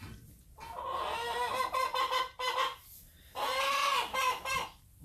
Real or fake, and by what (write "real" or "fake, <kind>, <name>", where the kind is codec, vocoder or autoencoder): real